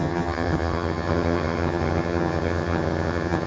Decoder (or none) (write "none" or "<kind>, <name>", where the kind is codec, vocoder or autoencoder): vocoder, HiFi-GAN